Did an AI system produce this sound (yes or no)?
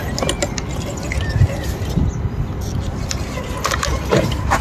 no